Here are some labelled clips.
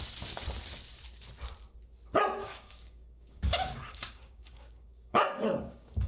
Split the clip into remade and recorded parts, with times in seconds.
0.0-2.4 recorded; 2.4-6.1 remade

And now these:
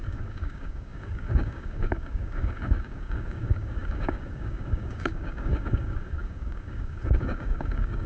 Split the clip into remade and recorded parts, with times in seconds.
0.0-8.1 remade

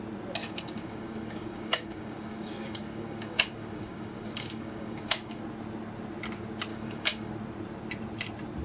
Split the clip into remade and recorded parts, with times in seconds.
0.0-0.4 recorded; 0.4-5.4 remade; 5.4-6.7 recorded; 6.7-7.3 remade; 7.3-8.6 recorded